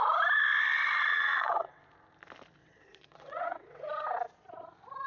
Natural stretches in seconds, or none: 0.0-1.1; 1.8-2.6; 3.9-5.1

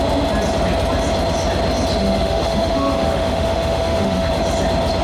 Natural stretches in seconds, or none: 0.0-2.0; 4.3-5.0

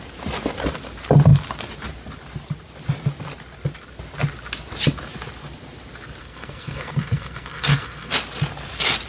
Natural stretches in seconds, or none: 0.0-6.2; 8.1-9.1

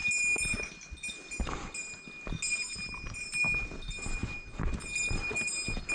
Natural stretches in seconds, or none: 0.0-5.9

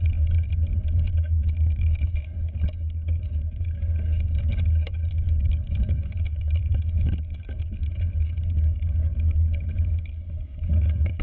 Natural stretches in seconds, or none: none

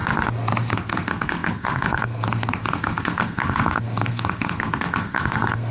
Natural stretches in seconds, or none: 0.0-0.7

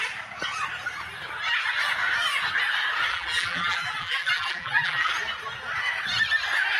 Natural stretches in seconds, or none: 0.0-3.1; 5.1-6.8